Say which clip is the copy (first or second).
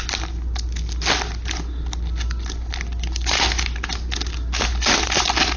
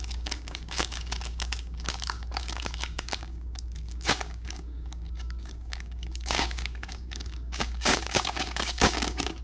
second